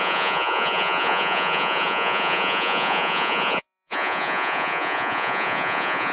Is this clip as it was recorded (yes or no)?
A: no